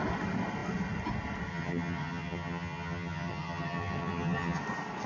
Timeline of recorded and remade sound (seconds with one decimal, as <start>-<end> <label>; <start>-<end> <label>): 0.0-1.5 recorded; 1.5-4.6 remade; 4.6-5.1 recorded

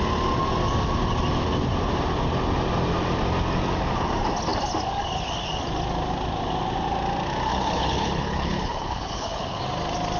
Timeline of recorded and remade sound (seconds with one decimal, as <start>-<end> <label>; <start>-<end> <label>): 0.0-7.5 recorded; 7.5-9.6 remade; 9.6-10.2 recorded

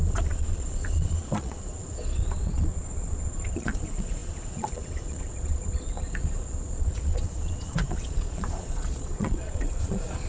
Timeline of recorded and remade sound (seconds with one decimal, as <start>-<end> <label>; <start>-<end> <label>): 0.0-10.3 remade

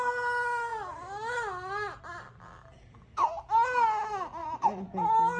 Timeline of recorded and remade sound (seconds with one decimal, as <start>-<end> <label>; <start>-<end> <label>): 0.0-4.4 recorded; 4.4-5.0 remade; 5.0-5.4 recorded

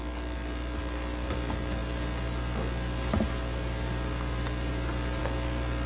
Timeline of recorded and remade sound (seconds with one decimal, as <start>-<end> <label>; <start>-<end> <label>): 0.0-5.9 recorded

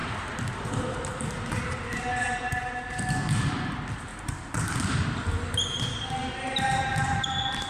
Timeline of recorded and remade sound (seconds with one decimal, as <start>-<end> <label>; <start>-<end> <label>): 0.0-2.8 remade; 2.8-4.1 recorded; 4.1-5.4 remade; 5.4-6.2 recorded; 6.2-7.3 remade; 7.3-7.7 recorded

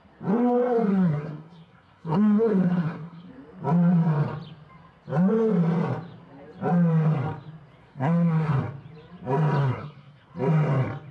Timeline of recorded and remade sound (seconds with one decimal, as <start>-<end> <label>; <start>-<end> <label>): 0.0-0.9 recorded; 0.9-3.3 remade; 3.3-7.8 recorded; 7.8-8.6 remade; 8.6-9.6 recorded; 9.6-10.3 remade; 10.3-11.1 recorded

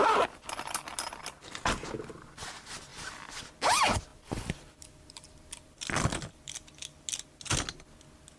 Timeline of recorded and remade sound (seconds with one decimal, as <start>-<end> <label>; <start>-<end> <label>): 0.0-0.9 recorded; 0.9-1.5 remade; 1.5-2.9 recorded; 2.9-3.4 remade; 3.4-4.1 recorded; 4.1-6.2 remade; 6.2-8.4 recorded